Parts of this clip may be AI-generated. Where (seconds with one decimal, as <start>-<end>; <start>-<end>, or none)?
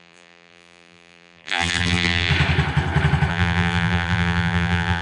0.0-2.3; 3.3-5.0